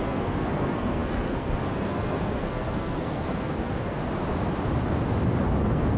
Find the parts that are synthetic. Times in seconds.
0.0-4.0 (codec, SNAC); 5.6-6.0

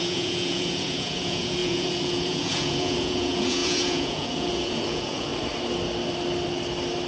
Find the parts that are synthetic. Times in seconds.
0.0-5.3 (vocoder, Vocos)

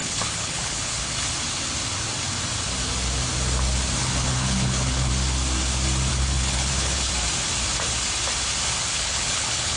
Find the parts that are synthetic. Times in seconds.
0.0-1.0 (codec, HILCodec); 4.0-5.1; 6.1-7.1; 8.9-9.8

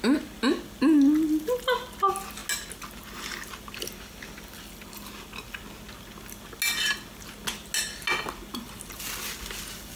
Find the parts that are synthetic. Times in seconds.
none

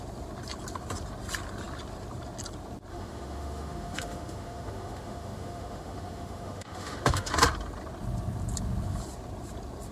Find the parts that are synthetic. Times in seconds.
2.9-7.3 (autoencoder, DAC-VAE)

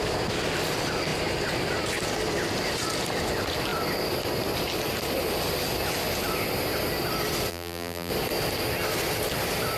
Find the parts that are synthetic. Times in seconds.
7.5-8.1 (vocoder, BigVGAN v2)